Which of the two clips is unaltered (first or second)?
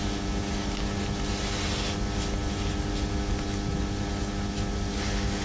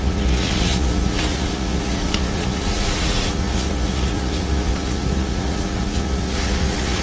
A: first